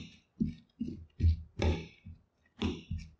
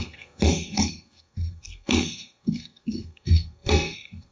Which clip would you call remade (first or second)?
second